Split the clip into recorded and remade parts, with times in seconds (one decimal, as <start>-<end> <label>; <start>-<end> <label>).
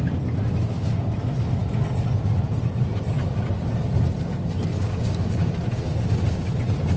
0.0-4.7 recorded; 4.7-5.5 remade; 5.5-7.0 recorded